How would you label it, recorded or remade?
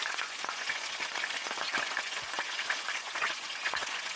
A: remade